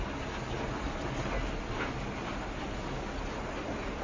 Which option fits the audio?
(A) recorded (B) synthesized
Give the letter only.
A